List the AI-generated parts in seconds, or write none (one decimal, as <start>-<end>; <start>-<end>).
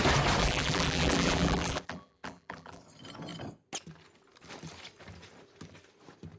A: 0.4-2.8